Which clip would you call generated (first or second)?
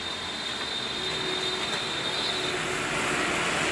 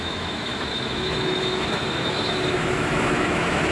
second